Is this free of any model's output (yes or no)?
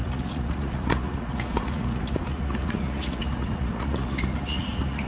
no